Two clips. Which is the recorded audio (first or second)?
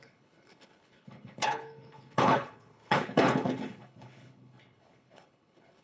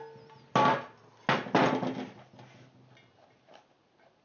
second